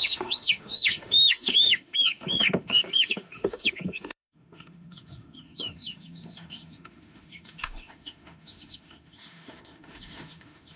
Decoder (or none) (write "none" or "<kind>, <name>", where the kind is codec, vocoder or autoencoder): autoencoder, DAC-VAE